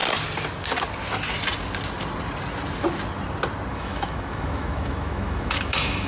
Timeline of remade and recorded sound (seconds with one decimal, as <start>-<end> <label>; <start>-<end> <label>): 0.0-3.7 recorded; 3.7-6.1 remade

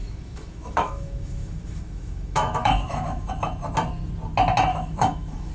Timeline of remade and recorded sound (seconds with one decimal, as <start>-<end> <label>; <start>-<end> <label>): 0.0-3.3 remade; 3.3-4.7 recorded; 4.7-5.5 remade

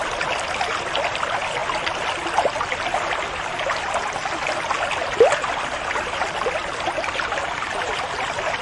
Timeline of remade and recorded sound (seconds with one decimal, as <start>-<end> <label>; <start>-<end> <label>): 0.0-8.6 recorded

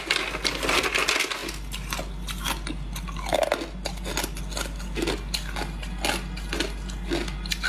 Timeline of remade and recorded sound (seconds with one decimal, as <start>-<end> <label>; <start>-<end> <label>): 0.0-7.7 recorded